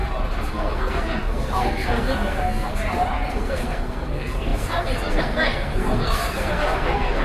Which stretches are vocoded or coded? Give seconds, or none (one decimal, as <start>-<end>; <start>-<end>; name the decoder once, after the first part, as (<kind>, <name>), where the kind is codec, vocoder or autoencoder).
0.5-2.8 (codec, SNAC); 3.3-7.2